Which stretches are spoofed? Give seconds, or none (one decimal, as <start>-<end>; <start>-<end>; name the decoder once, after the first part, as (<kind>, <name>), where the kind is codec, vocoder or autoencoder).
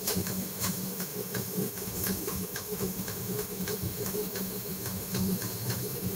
0.0-6.2 (autoencoder, DAC-VAE)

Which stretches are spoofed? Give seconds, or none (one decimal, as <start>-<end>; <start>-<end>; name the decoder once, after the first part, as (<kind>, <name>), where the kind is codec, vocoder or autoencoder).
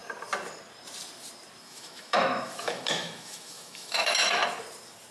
1.6-4.4 (autoencoder, DAC-VAE)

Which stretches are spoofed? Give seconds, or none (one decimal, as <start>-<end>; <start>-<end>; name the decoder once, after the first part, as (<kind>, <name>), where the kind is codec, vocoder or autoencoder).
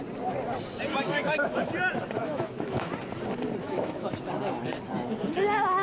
0.9-1.7 (autoencoder, DAC-VAE); 2.2-2.9; 3.6-4.1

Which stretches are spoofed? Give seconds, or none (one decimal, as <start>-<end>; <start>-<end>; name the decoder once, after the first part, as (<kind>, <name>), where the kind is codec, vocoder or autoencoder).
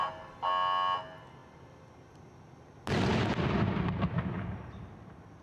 none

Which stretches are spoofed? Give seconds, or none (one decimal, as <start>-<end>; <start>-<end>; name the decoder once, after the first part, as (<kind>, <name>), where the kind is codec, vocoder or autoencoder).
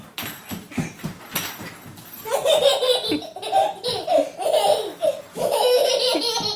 5.3-5.9 (autoencoder, DAC-VAE)